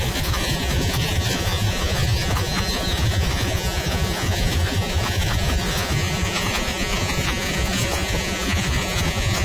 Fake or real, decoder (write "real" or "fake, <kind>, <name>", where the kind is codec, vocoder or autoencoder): fake, vocoder, Vocos